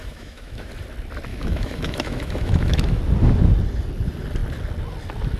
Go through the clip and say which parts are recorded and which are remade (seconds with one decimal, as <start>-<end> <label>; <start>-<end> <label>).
0.0-0.7 remade; 0.7-1.3 recorded; 1.3-3.0 remade; 3.0-5.4 recorded